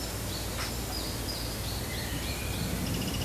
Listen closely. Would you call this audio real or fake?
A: real